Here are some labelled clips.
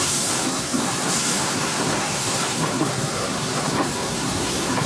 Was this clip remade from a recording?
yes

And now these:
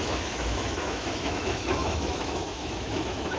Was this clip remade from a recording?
yes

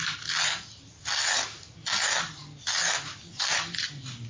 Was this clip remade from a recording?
no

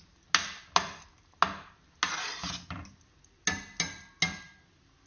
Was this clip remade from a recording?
no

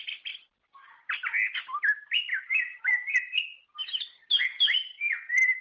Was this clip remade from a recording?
no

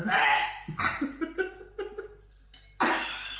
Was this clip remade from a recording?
no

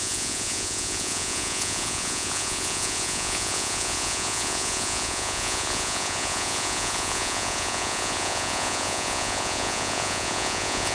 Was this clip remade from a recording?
yes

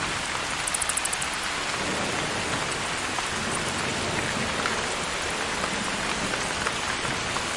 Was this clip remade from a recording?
no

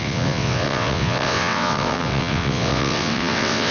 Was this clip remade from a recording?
yes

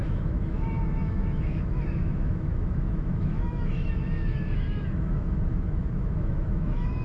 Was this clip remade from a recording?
yes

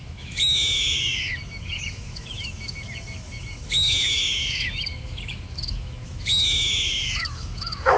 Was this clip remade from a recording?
yes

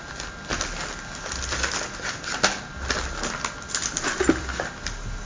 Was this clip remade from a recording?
no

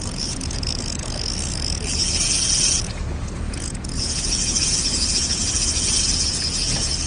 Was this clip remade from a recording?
yes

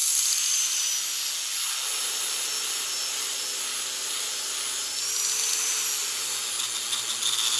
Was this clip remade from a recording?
no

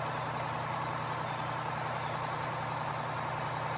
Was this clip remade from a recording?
no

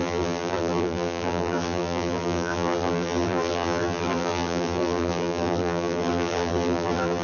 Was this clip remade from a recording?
yes